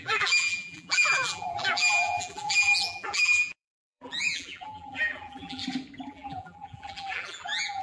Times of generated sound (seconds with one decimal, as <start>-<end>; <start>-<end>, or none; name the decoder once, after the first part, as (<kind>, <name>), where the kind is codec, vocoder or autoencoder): 0.0-5.6 (vocoder, BigVGAN v2); 6.1-7.8